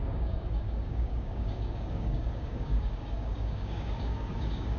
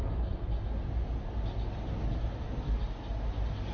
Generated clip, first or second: first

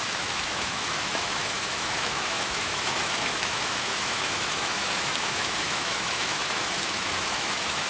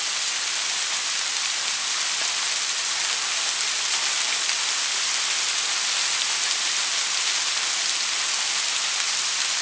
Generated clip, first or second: first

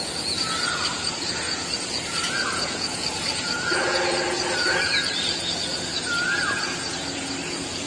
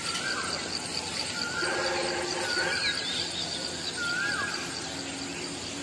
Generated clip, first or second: first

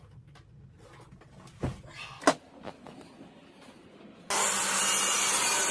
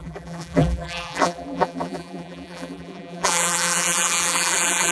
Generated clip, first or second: second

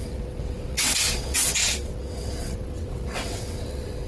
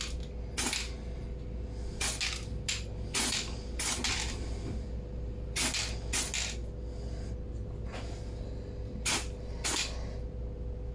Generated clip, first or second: first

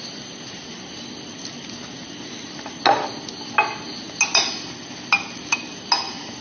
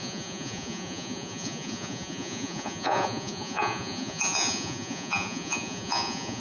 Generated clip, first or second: second